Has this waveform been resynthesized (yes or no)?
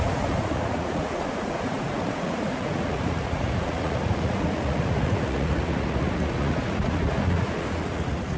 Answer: yes